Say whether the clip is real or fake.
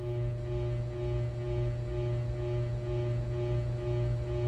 real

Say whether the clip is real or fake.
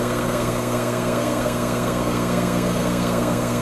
fake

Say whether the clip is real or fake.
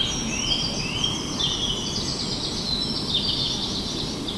real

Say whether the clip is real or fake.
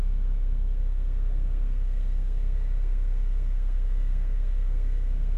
fake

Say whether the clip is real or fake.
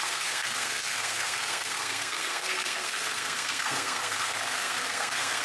fake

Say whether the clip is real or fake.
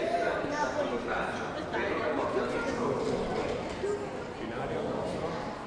real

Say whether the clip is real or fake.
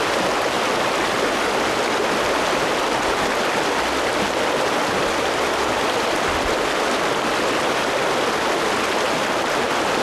real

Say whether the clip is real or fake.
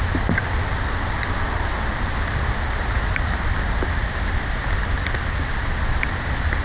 real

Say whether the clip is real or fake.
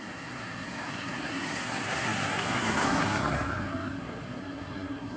fake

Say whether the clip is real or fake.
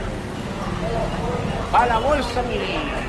real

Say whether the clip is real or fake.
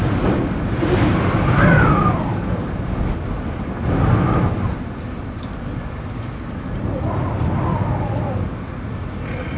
real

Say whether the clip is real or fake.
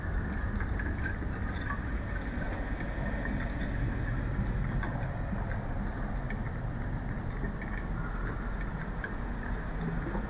real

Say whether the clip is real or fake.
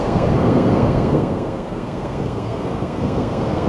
fake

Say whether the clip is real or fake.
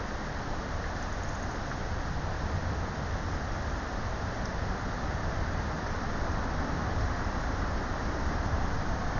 real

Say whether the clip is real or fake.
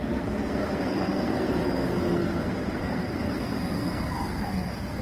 fake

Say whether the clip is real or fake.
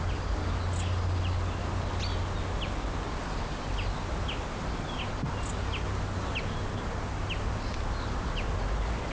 real